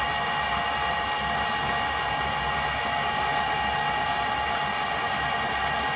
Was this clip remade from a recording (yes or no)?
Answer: no